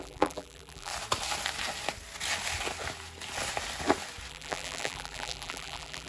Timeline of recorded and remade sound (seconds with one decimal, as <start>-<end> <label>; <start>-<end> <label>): 0.0-0.9 remade; 0.9-4.3 recorded; 4.3-6.1 remade